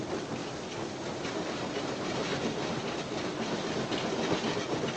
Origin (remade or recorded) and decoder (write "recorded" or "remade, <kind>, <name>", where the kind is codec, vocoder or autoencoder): recorded